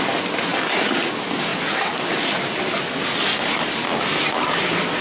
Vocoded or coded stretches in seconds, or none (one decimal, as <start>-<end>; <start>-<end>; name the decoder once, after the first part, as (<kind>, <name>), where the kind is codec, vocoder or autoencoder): none